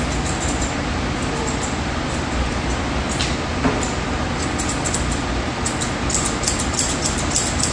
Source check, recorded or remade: recorded